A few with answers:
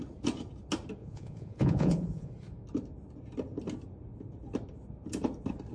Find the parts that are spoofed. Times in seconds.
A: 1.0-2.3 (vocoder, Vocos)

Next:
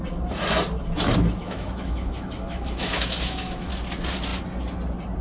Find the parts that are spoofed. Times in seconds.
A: 1.4-3.7 (autoencoder, DAC-VAE)

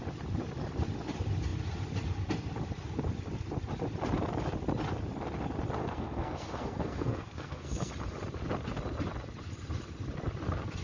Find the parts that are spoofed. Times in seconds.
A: 5.8-7.9 (codec, SNAC)

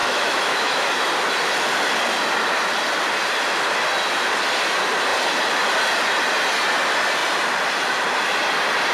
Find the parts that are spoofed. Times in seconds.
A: 0.0-0.9 (autoencoder, DAC-VAE)

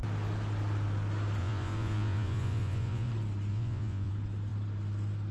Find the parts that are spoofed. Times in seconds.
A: 1.4-3.1 (vocoder, Vocos); 3.5-4.1